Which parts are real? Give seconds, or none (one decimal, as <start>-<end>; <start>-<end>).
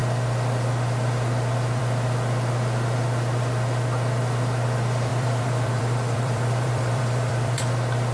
0.0-5.1; 7.6-8.1